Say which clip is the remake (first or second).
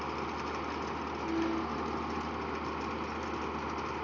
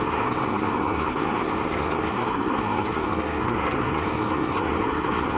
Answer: second